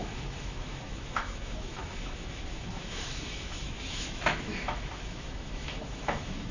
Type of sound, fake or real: fake